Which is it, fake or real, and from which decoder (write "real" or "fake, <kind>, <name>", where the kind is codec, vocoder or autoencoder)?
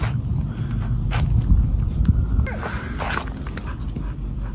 real